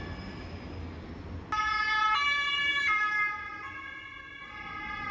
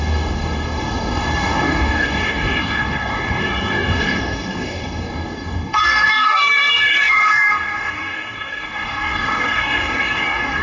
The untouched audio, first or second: first